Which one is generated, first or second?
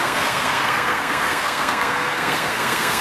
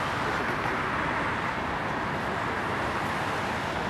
first